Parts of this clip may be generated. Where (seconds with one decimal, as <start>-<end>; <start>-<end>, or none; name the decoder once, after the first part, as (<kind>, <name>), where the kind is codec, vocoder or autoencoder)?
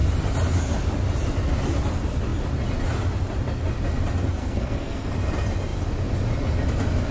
4.4-5.1 (codec, SNAC)